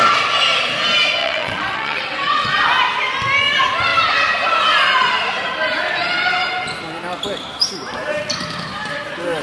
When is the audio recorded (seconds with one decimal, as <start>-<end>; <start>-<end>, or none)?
0.0-1.2; 2.6-9.4